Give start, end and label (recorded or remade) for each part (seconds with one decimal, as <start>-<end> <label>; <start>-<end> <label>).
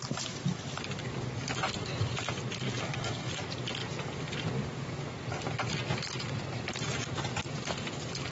0.0-2.8 recorded; 2.8-3.3 remade; 3.3-8.3 recorded